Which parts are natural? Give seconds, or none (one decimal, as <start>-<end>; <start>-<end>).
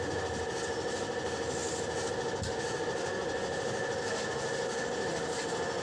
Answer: 0.0-5.8